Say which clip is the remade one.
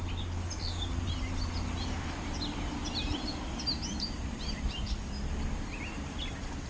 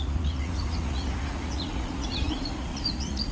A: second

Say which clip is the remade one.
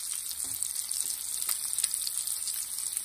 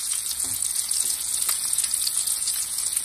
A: second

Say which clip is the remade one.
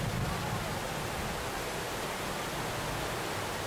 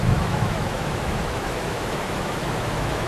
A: second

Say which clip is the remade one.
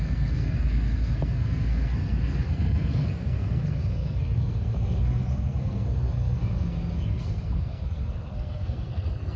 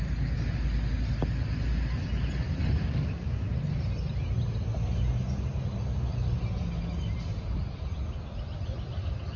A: first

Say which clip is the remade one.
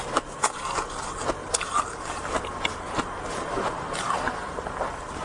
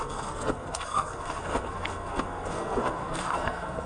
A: second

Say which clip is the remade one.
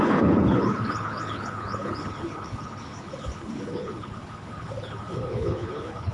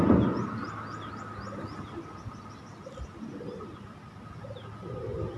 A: first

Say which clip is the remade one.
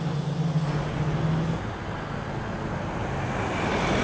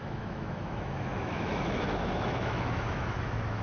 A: second